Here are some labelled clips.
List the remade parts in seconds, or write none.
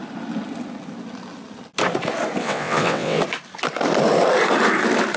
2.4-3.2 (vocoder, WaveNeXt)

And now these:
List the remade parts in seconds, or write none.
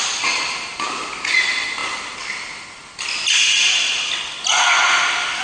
none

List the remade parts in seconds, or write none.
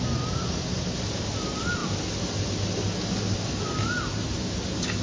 none